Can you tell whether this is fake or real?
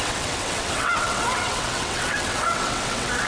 fake